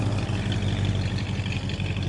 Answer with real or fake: fake